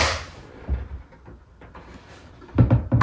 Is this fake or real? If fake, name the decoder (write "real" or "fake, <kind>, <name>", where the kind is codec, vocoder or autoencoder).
real